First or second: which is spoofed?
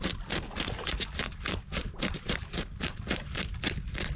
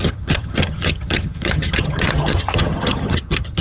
second